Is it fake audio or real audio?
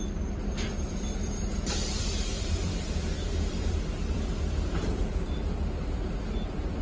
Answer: fake